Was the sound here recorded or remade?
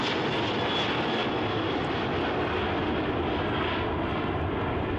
recorded